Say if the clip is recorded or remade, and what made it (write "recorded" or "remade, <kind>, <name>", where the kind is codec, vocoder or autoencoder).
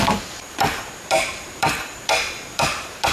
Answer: remade, vocoder, BigVGAN v2